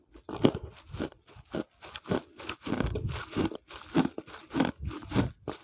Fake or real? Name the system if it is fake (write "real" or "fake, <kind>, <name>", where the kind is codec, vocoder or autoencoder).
real